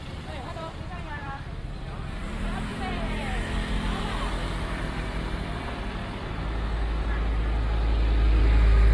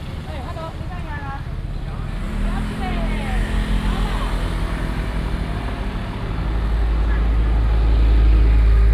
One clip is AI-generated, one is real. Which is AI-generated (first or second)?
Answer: first